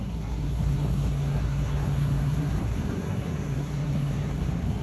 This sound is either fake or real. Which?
fake